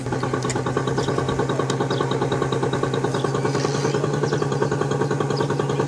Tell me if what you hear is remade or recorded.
recorded